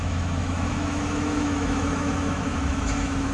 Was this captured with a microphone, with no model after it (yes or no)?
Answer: no